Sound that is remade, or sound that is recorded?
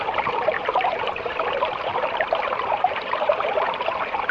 remade